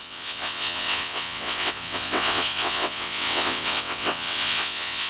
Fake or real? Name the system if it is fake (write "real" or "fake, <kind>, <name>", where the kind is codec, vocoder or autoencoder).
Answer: fake, vocoder, WaveNeXt